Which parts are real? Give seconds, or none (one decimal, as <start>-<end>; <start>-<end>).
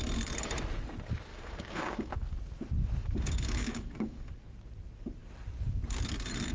0.0-1.3; 2.1-3.0; 4.3-6.5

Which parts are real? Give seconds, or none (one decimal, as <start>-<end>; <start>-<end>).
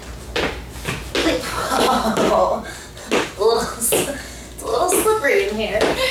0.0-1.2; 2.3-4.7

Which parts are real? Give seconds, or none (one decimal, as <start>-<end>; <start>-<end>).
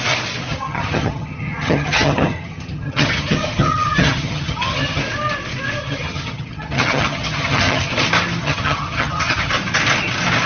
0.0-0.5; 5.0-5.8; 7.9-8.4; 9.5-10.5